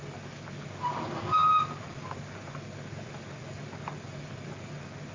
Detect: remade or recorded recorded